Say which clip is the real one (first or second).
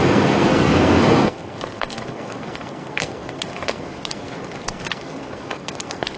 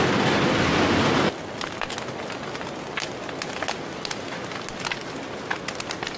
second